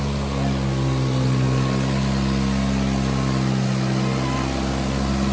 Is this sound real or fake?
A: real